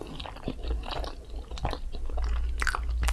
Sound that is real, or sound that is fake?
real